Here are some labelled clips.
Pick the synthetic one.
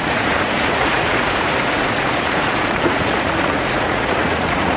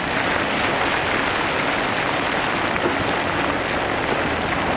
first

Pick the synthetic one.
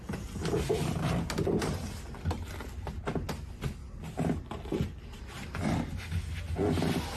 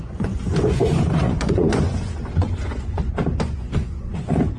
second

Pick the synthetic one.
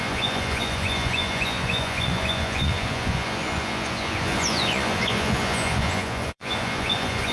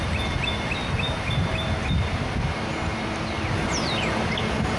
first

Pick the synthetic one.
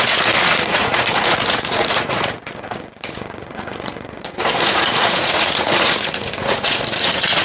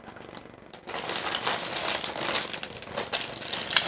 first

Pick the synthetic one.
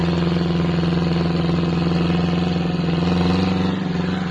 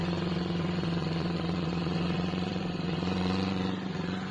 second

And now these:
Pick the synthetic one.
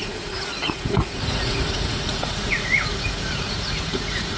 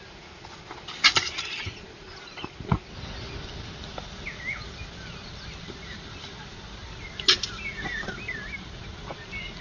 first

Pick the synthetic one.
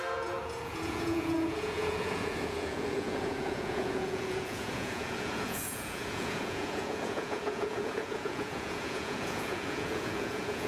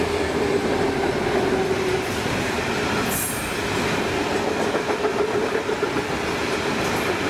first